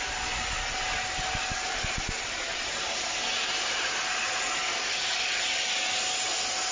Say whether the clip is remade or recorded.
recorded